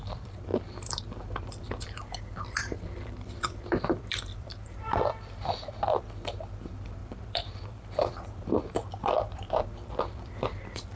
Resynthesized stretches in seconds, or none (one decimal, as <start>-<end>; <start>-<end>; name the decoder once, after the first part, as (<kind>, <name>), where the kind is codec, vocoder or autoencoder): 0.0-11.0 (vocoder, BigVGAN v2)